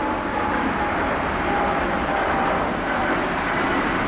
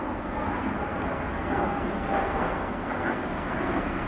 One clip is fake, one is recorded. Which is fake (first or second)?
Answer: second